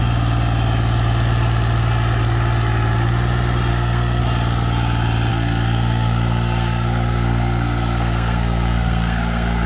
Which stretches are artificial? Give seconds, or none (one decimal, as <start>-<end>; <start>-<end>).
3.7-4.2; 5.3-9.7